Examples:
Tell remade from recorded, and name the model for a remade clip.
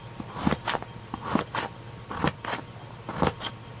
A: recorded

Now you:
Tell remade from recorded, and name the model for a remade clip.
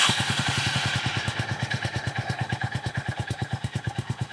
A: remade, autoencoder, DAC-VAE